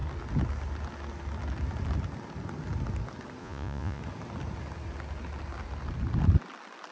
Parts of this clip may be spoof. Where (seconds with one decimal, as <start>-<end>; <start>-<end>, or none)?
3.4-4.0